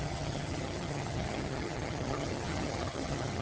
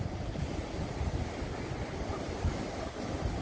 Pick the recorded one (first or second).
second